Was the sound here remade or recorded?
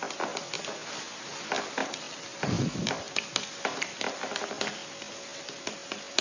recorded